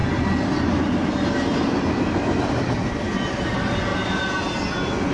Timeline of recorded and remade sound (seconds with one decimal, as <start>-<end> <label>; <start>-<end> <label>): 0.0-5.1 recorded